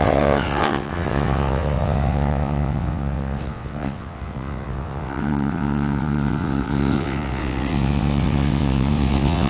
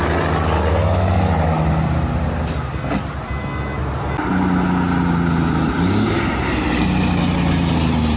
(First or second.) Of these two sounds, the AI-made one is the first